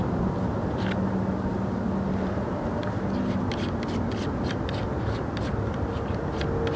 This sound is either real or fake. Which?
real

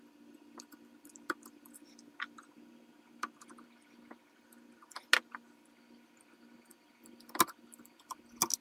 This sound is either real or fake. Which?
real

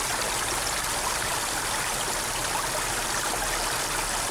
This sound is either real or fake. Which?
real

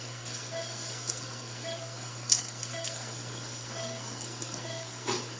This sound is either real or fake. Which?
fake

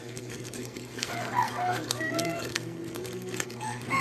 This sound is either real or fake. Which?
fake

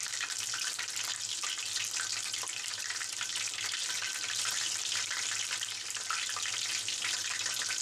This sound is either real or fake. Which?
real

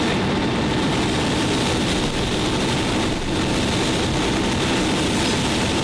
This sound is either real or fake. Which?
real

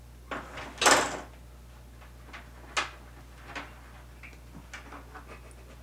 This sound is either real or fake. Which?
real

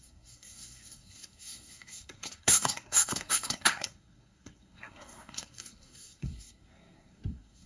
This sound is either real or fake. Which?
fake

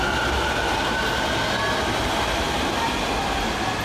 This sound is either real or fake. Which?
real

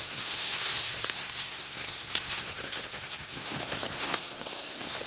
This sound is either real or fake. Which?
fake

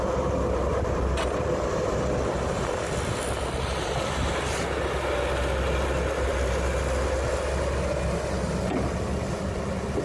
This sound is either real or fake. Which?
real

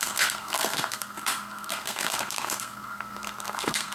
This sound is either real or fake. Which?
fake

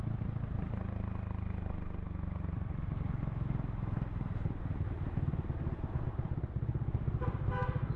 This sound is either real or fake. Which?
real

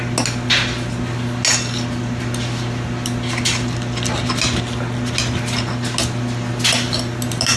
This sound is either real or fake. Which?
real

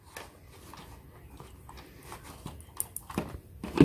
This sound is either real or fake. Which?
real